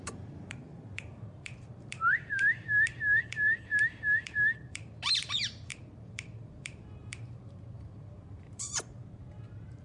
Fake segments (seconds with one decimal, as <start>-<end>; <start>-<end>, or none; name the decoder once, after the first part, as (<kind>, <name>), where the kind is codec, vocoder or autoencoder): 0.0-9.8 (vocoder, BigVGAN v2)